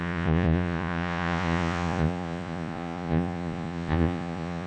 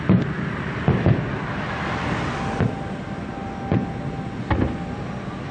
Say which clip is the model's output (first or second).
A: first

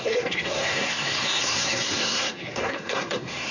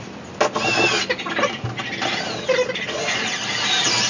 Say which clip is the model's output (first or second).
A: first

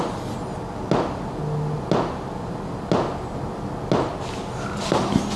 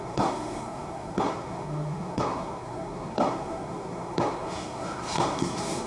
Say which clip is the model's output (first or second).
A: second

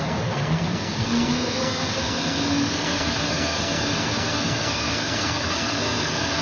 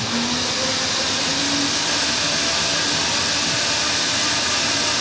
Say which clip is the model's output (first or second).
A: first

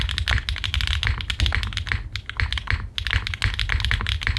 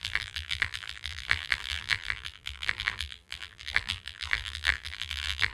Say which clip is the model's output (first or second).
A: second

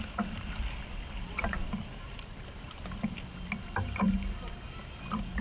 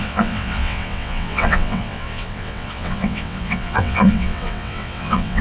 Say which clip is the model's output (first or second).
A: second